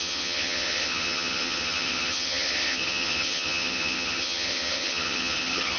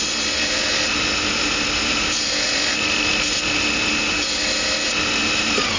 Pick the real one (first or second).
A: second